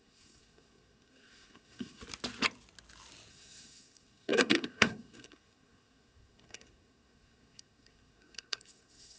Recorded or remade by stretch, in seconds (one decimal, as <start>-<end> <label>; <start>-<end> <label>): 0.0-2.0 remade; 2.0-3.3 recorded; 3.3-9.2 remade